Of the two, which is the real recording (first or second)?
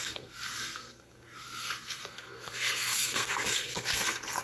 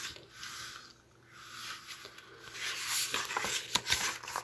second